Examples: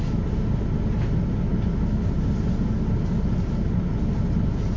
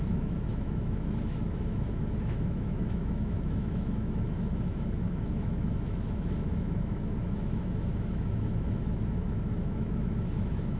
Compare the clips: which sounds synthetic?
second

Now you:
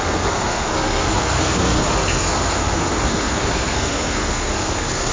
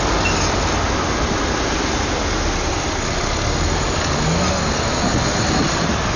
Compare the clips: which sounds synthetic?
first